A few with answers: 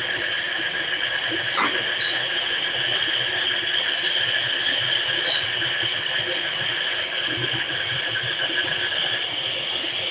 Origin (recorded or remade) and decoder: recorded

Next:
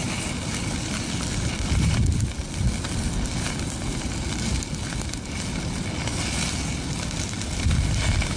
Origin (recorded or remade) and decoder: recorded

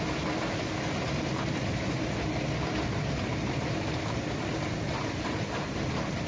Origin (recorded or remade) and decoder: recorded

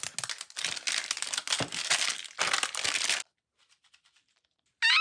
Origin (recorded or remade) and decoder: recorded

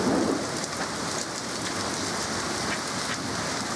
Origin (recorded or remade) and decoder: recorded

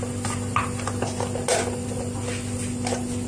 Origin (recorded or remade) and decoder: recorded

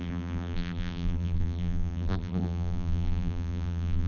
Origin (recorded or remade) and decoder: remade, vocoder, BigVGAN v2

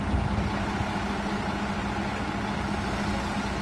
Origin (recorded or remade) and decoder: recorded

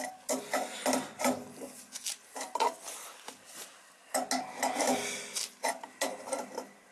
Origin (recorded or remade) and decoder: recorded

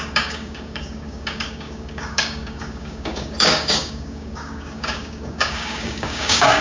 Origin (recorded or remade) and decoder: remade, codec, DAC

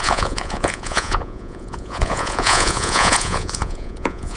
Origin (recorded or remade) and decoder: remade, vocoder, Vocos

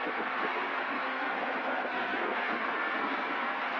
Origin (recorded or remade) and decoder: remade, codec, SNAC